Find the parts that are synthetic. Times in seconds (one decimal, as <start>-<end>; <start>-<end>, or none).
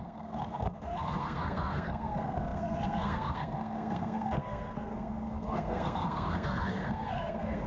0.0-7.7